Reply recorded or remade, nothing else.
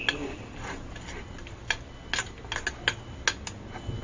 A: recorded